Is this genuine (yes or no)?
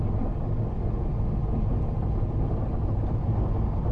yes